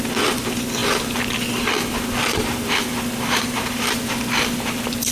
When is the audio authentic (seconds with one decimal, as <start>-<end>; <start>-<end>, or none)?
0.0-2.3; 3.8-5.1